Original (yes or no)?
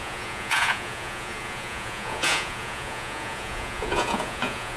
no